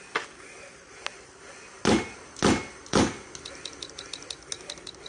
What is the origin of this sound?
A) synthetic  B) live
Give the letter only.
B